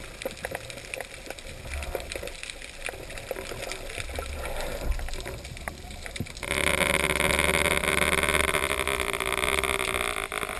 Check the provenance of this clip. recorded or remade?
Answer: recorded